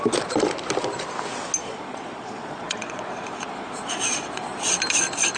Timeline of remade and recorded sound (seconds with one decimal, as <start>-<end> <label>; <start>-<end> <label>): 0.0-1.6 recorded; 1.6-4.8 remade; 4.8-5.4 recorded